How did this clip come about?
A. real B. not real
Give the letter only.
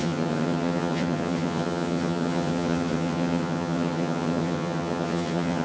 B